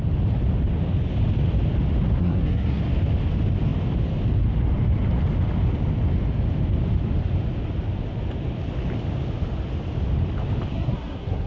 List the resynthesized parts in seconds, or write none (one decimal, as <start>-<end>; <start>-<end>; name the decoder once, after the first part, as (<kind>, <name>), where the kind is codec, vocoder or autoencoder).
2.2-2.8 (codec, SNAC); 10.7-11.5